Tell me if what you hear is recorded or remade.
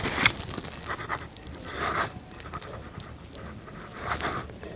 remade